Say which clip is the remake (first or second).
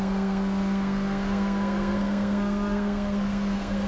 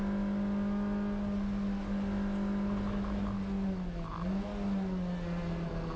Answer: first